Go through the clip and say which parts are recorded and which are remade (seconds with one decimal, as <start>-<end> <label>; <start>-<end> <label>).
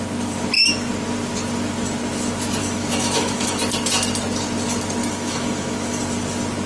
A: 0.0-2.6 recorded; 2.6-3.6 remade; 3.6-5.0 recorded; 5.0-6.0 remade; 6.0-6.7 recorded